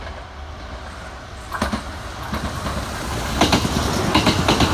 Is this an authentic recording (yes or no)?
yes